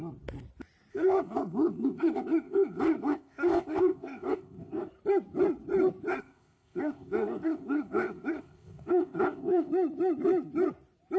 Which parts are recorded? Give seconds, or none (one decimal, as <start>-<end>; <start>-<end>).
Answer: 0.0-0.9; 4.9-6.1; 9.7-11.2